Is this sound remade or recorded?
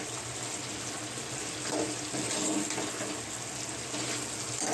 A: recorded